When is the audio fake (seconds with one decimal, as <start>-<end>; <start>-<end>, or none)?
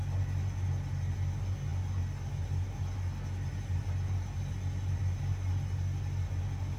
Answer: none